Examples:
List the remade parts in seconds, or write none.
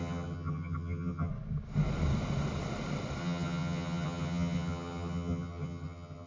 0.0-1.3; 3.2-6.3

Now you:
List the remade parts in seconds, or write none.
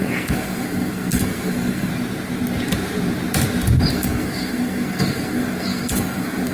0.0-1.9; 3.9-6.5